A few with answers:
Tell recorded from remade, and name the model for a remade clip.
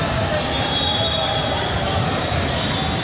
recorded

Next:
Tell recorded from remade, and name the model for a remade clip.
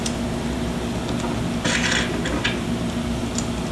recorded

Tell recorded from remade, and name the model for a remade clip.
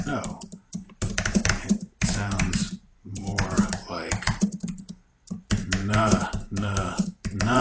remade, vocoder, BigVGAN v2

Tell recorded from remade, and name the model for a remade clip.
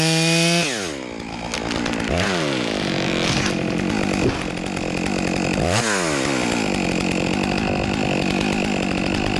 recorded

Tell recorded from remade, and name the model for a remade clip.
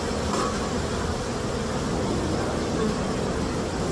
recorded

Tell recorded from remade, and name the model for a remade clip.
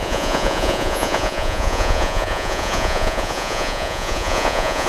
remade, vocoder, Vocos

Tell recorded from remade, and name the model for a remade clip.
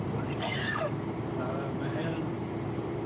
remade, vocoder, BigVGAN v2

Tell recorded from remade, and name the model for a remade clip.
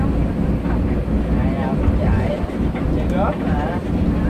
recorded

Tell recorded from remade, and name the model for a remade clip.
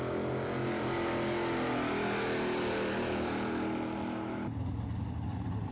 recorded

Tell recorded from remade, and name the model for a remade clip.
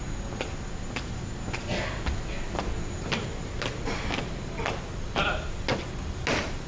recorded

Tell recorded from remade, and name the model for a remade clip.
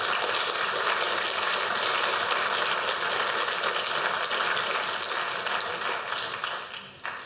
recorded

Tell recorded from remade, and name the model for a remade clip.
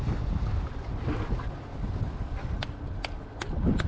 recorded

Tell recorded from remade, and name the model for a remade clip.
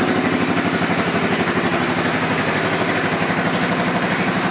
recorded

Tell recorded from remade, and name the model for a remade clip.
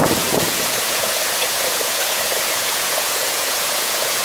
remade, vocoder, Vocos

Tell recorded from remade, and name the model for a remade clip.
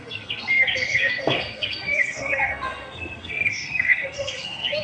remade, codec, SNAC